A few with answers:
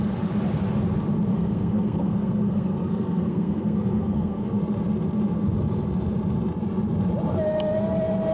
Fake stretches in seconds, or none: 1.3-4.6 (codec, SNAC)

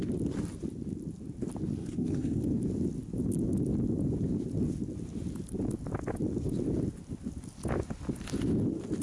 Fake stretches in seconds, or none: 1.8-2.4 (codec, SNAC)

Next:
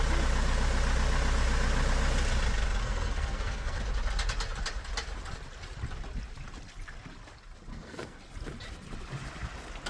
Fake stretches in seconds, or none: 2.8-3.8 (codec, SNAC); 7.7-8.2